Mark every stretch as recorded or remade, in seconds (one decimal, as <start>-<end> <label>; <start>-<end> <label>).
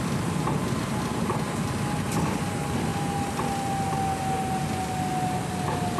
0.0-6.0 recorded